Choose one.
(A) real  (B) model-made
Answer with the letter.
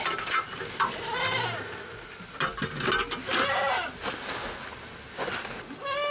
A